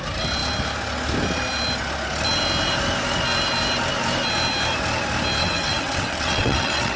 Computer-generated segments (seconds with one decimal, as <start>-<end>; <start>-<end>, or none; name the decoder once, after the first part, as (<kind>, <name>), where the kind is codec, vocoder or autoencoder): 5.4-7.0 (vocoder, WaveNeXt)